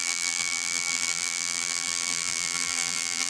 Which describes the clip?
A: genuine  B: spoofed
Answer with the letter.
B